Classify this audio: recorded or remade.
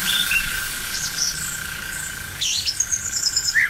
remade